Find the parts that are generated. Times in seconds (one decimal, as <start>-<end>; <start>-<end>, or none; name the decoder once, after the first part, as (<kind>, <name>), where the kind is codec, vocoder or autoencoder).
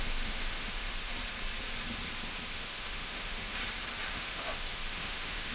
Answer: 0.0-1.1 (autoencoder, DAC-VAE); 2.5-3.6; 4.1-5.5